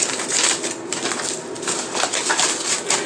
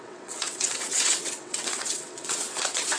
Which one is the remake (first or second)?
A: second